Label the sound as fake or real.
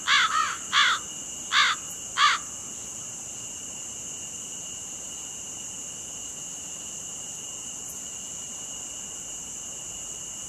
real